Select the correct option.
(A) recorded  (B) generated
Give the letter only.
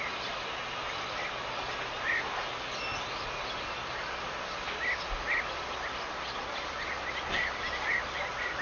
A